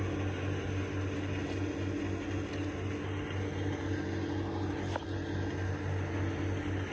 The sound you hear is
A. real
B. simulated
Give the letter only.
A